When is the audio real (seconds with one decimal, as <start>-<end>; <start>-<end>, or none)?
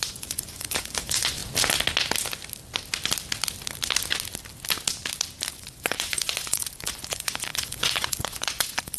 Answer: 1.4-5.5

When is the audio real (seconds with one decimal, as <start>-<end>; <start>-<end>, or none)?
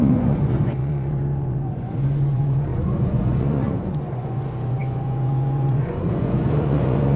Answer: none